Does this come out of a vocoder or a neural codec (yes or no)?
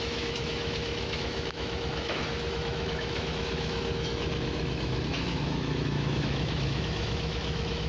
yes